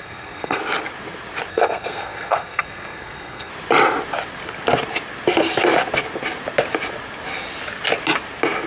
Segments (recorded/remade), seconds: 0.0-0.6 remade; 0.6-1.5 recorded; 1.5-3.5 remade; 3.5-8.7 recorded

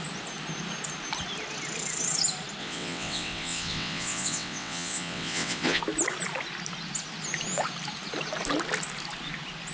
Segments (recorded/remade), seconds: 0.0-2.6 recorded; 2.6-5.8 remade; 5.8-9.7 recorded